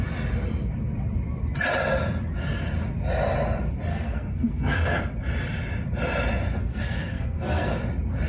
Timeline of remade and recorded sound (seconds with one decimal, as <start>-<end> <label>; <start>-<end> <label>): 0.0-3.9 recorded; 3.9-5.0 remade; 5.0-6.6 recorded; 6.6-7.8 remade; 7.8-8.3 recorded